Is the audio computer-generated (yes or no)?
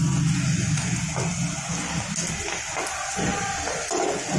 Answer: no